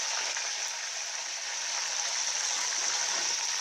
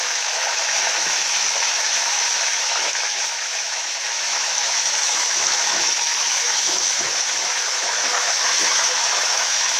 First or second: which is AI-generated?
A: second